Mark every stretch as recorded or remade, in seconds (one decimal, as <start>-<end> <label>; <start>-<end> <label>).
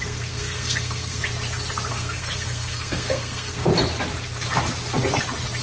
0.0-1.2 remade; 1.2-1.9 recorded; 1.9-3.7 remade; 3.7-5.6 recorded